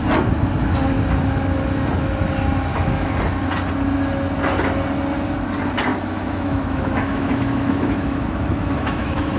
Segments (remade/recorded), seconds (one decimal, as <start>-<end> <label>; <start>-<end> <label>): 0.0-2.7 recorded; 2.7-3.2 remade; 3.2-5.9 recorded; 5.9-9.4 remade